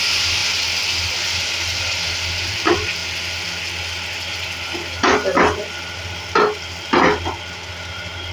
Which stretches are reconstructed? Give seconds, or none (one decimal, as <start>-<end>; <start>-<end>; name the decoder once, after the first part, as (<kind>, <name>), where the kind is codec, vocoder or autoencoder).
none